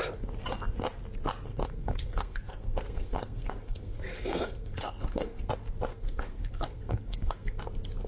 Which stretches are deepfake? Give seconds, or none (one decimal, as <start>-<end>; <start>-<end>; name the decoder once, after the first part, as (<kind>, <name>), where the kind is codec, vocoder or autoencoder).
1.5-5.5 (codec, SNAC); 5.9-7.6